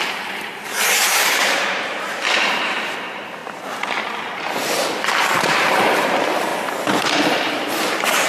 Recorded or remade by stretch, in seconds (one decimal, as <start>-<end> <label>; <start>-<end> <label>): 0.0-3.4 remade; 3.4-4.3 recorded; 4.3-6.5 remade; 6.5-7.0 recorded; 7.0-8.3 remade